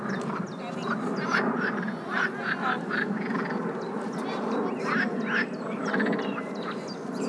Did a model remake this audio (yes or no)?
no